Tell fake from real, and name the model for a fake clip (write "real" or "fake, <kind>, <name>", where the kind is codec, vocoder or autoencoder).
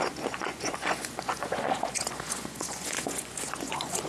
fake, vocoder, Vocos